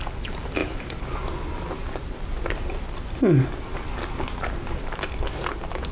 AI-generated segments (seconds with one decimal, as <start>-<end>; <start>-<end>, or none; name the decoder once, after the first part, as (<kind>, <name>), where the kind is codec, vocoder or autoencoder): none